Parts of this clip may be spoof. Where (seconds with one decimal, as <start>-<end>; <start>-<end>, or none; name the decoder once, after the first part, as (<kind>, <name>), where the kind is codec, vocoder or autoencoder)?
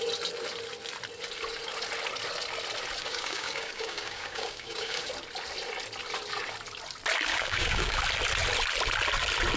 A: 3.0-5.1 (codec, DAC); 7.3-8.0